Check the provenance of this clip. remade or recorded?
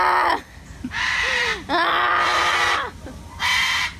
recorded